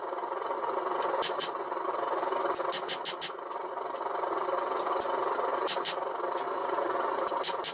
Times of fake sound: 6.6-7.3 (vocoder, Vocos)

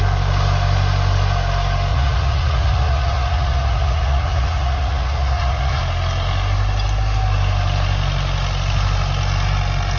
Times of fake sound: 1.9-5.8 (vocoder, Vocos)

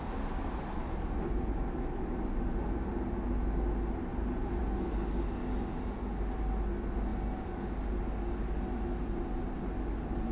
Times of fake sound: none

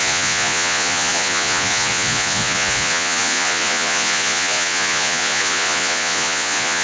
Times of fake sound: 0.0-6.8 (vocoder, Vocos)

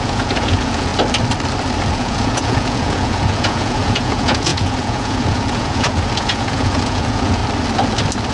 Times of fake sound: 0.0-0.9 (vocoder, Vocos); 1.9-7.4